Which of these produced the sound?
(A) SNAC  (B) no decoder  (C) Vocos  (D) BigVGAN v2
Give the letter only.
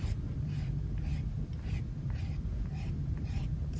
B